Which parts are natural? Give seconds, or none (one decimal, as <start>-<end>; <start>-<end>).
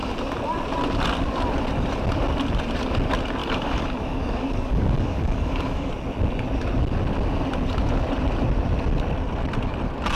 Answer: 0.0-3.4; 5.9-10.2